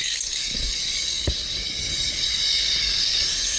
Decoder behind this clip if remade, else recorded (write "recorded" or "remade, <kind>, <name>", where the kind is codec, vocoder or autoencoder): remade, codec, DAC